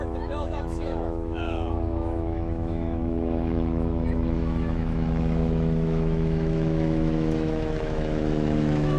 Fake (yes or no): yes